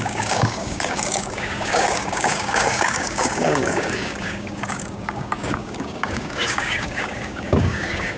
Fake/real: fake